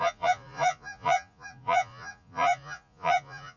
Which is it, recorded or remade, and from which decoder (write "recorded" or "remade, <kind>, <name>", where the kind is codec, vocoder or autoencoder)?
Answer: remade, vocoder, Vocos